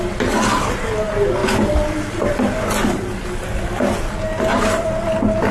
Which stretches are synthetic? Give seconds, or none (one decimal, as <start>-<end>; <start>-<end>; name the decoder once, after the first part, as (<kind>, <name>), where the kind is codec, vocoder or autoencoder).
none